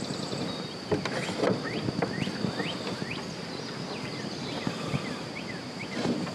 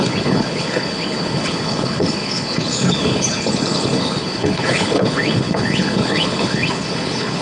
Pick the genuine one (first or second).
first